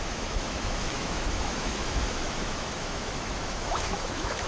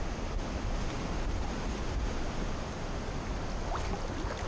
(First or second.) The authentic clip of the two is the second